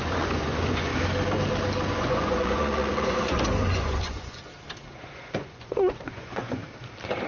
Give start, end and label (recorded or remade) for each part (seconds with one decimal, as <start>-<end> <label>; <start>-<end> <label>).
0.0-0.9 remade; 0.9-1.9 recorded; 1.9-4.5 remade; 4.5-5.0 recorded; 5.0-6.6 remade; 6.6-7.3 recorded